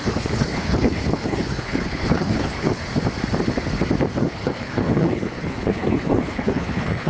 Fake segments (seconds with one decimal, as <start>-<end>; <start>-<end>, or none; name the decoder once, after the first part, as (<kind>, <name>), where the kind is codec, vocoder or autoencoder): 0.0-2.8 (codec, HILCodec); 4.2-7.1